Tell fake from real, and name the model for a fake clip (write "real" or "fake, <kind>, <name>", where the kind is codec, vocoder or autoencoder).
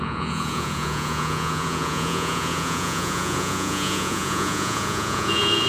fake, vocoder, Vocos